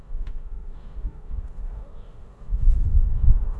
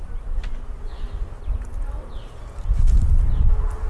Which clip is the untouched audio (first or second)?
second